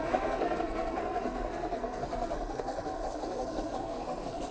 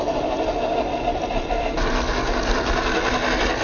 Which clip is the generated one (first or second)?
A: first